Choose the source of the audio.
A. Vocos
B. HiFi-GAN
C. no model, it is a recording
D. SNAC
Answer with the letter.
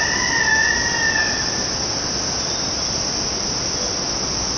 C